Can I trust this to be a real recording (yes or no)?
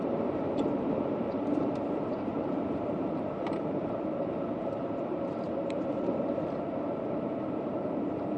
no